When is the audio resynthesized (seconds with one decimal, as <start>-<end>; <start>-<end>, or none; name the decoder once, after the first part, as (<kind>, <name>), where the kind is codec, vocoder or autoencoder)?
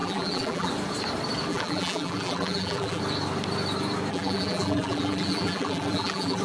0.0-0.7 (vocoder, BigVGAN v2); 1.5-3.0; 4.1-6.4